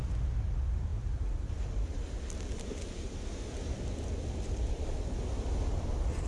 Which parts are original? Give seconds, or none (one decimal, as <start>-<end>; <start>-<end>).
0.0-6.3